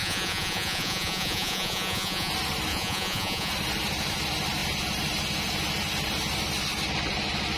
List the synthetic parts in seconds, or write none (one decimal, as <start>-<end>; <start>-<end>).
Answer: 0.0-2.3; 2.7-3.5